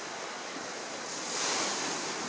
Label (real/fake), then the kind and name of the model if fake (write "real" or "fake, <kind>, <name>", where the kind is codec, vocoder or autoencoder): real